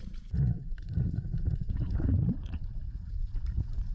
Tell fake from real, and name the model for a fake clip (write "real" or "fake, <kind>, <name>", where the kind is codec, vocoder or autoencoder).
fake, vocoder, Vocos